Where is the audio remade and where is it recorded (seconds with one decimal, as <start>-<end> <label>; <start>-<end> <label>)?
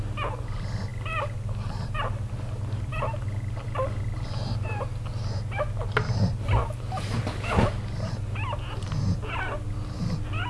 0.0-10.5 recorded